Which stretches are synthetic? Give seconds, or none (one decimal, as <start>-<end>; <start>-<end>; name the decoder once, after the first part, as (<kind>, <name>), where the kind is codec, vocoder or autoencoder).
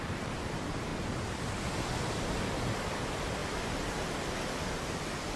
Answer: 0.0-0.9 (vocoder, BigVGAN v2); 2.1-5.4